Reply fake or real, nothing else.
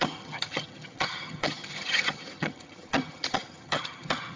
fake